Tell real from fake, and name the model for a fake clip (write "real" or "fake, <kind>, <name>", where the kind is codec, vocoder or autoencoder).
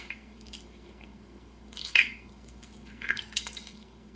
fake, codec, SNAC